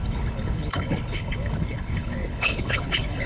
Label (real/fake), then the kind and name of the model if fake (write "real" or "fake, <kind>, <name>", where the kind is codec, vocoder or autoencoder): fake, codec, HILCodec